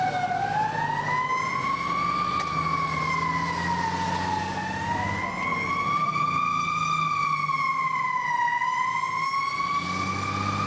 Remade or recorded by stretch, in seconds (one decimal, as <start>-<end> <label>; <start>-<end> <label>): 0.0-5.5 recorded; 5.5-6.2 remade; 6.2-10.7 recorded